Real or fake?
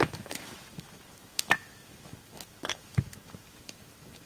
fake